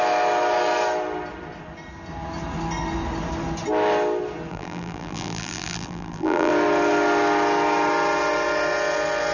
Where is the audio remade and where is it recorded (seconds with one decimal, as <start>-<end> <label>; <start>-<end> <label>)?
0.0-4.5 recorded; 4.5-6.5 remade; 6.5-9.3 recorded